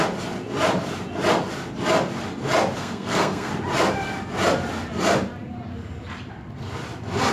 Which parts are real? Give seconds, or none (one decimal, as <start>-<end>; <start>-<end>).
0.0-2.8; 3.5-7.3